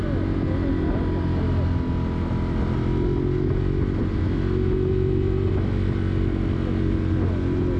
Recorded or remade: recorded